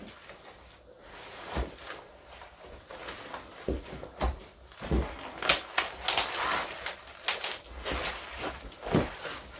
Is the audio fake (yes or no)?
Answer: no